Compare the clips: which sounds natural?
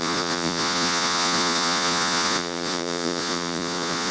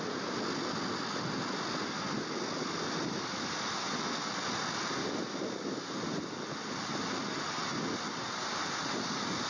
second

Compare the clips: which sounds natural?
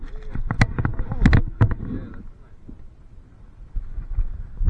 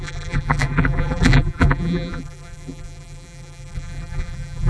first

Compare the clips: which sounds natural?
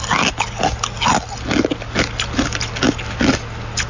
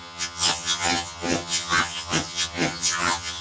first